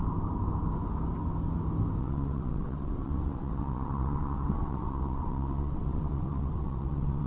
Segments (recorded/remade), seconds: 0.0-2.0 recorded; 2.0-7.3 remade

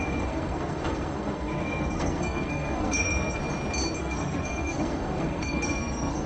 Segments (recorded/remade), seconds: 0.0-3.4 remade; 3.4-4.0 recorded; 4.0-6.3 remade

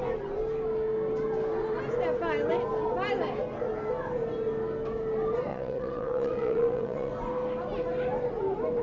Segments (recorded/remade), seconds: 0.0-5.5 recorded; 5.5-7.1 remade; 7.1-8.8 recorded

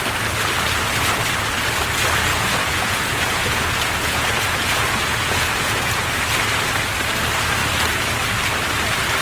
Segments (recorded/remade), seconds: 0.0-2.3 recorded; 2.3-6.2 remade; 6.2-9.2 recorded

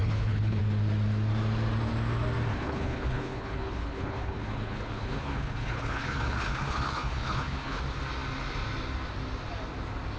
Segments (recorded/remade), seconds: 0.0-0.6 remade; 0.6-2.5 recorded; 2.5-7.8 remade; 7.8-10.2 recorded

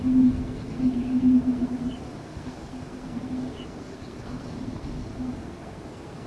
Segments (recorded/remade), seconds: 0.0-6.3 remade